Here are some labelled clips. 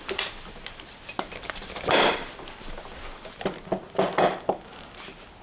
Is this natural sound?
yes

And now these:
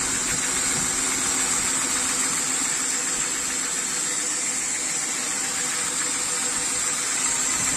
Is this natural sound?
yes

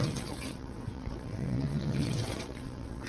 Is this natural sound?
no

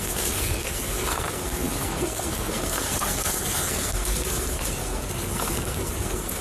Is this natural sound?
no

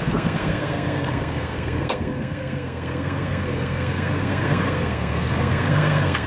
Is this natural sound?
no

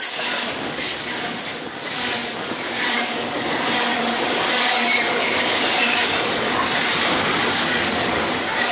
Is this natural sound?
no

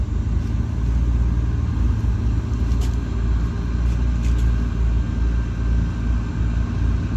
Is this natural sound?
yes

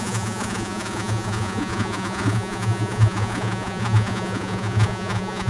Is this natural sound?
no